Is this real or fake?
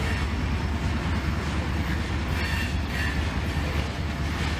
real